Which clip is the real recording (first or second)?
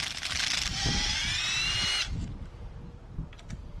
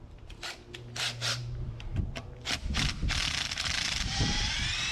first